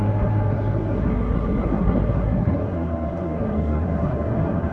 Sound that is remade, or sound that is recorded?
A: remade